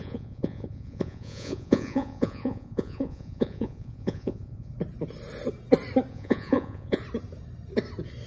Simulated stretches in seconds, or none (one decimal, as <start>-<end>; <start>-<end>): 0.0-4.7; 6.1-7.0

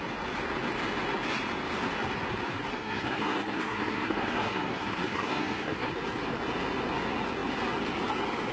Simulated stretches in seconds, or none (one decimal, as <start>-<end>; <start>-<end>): 2.7-5.9